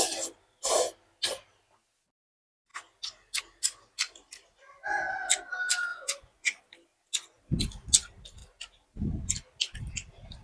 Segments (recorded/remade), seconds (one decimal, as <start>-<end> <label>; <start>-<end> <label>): 0.0-5.9 recorded; 5.9-6.6 remade; 6.6-10.4 recorded